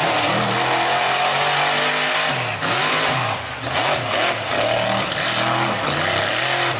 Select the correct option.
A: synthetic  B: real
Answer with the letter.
B